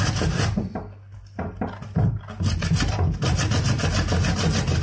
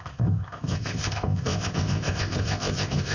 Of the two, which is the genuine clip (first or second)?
first